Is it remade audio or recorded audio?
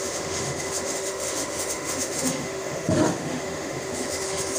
remade